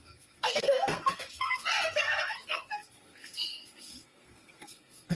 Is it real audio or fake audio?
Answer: fake